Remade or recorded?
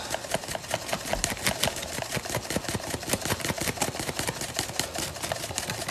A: recorded